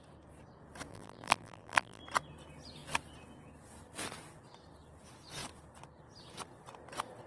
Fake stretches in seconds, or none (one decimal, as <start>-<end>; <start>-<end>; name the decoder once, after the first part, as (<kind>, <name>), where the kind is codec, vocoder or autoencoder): 0.9-2.0 (vocoder, BigVGAN v2)